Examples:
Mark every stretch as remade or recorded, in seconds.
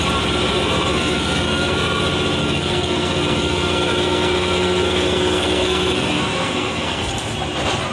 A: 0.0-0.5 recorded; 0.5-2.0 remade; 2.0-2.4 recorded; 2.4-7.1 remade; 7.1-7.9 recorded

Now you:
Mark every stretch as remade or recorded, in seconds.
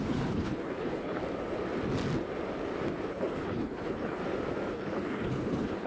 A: 0.0-1.2 remade; 1.2-3.1 recorded; 3.1-4.2 remade; 4.2-4.7 recorded; 4.7-5.9 remade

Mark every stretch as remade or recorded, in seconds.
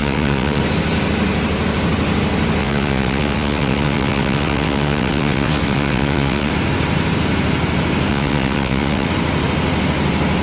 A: 0.0-0.6 remade; 0.6-2.6 recorded; 2.6-6.5 remade; 6.5-8.1 recorded; 8.1-9.1 remade; 9.1-10.4 recorded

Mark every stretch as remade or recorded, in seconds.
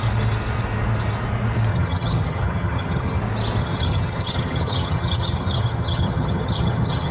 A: 0.0-1.7 recorded; 1.7-3.2 remade; 3.2-3.6 recorded; 3.6-7.1 remade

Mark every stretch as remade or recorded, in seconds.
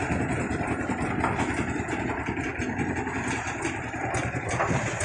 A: 0.0-2.5 recorded; 2.5-4.5 remade; 4.5-5.0 recorded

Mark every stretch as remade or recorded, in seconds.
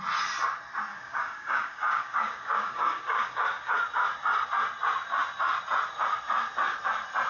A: 0.0-0.9 recorded; 0.9-3.8 remade; 3.8-7.3 recorded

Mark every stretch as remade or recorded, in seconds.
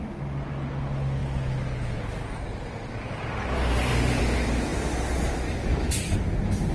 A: 0.0-6.7 recorded